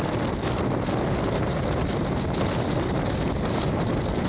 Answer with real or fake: real